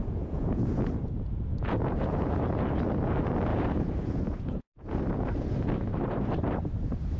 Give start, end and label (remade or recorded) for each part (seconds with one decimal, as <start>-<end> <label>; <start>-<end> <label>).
0.0-0.9 remade; 0.9-1.5 recorded; 1.5-2.4 remade; 2.4-3.5 recorded; 3.5-5.0 remade; 5.0-7.2 recorded